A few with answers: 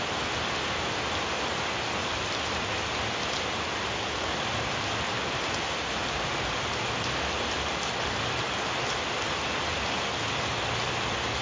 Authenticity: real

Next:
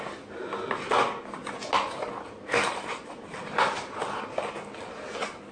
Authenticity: real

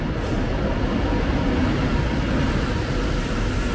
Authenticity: real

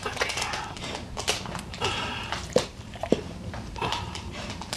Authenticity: fake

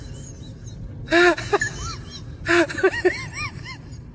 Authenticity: real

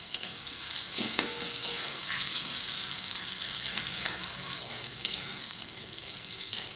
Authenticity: fake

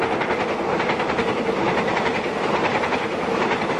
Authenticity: real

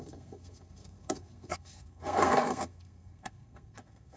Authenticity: fake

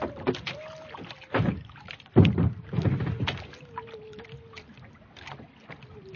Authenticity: real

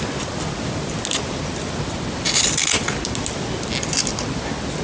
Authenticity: real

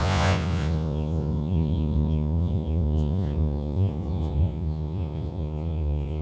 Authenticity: fake